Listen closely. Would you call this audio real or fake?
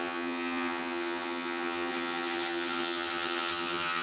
fake